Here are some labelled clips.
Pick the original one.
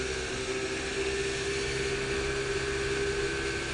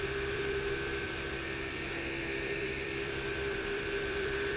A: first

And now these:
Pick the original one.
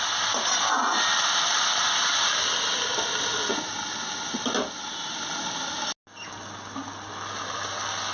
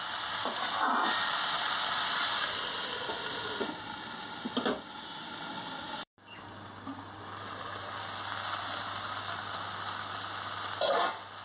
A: first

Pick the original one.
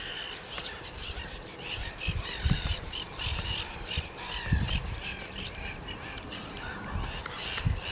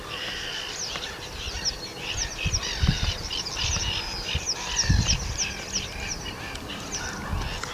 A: second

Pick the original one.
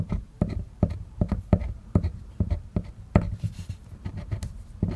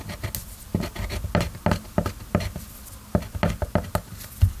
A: second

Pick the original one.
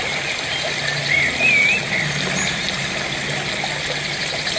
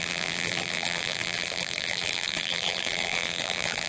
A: first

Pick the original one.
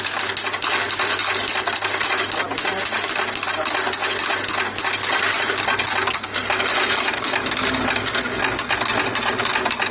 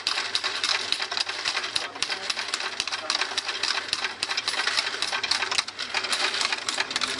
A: first